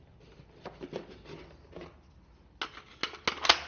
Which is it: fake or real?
real